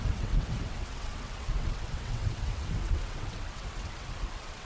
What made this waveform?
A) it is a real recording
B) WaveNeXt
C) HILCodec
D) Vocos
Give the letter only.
B